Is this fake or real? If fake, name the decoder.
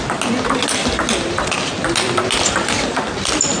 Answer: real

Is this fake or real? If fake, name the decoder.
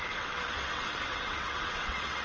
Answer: fake, vocoder, WaveNeXt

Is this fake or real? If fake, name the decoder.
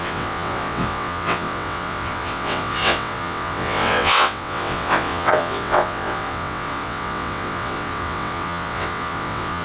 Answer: fake, vocoder, WaveNeXt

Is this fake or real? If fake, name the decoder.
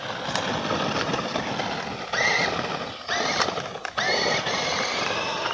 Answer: real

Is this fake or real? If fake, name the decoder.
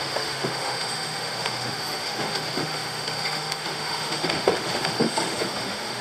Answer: fake, autoencoder, DAC-VAE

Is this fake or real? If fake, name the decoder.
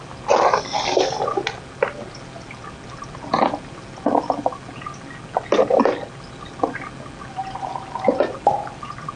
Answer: real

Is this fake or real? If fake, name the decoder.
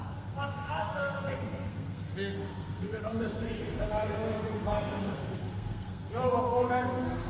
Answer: fake, codec, SNAC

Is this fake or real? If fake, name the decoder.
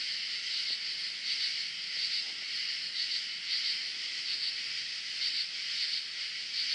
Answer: real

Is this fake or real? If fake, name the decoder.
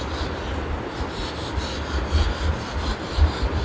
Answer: real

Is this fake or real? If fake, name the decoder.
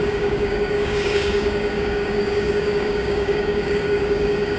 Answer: fake, codec, DAC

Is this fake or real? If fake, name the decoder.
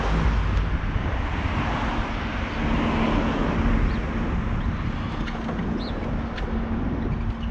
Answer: real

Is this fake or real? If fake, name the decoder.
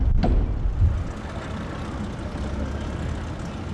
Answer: real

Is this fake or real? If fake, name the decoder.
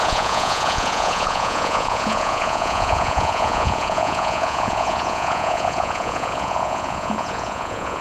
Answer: fake, vocoder, Vocos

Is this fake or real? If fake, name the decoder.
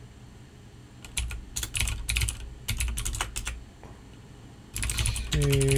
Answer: real